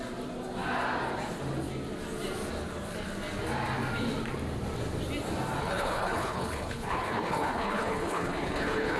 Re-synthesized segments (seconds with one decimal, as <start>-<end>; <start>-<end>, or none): 5.6-9.0